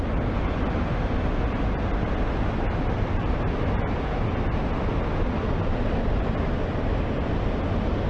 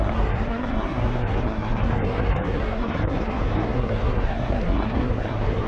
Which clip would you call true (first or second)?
first